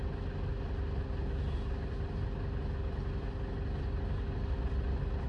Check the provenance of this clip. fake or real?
real